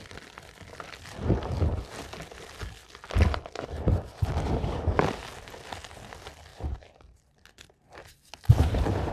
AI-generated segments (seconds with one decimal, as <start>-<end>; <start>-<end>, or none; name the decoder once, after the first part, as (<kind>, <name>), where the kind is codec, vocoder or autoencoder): 6.5-7.2 (vocoder, BigVGAN v2)